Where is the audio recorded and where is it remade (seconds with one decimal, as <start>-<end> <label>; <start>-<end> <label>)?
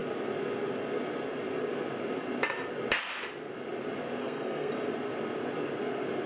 0.0-4.2 recorded; 4.2-4.7 remade; 4.7-6.3 recorded